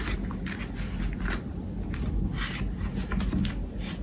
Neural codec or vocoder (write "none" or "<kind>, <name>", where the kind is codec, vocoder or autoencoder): none